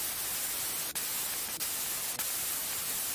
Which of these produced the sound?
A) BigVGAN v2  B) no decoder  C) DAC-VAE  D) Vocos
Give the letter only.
B